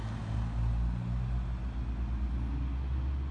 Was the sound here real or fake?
real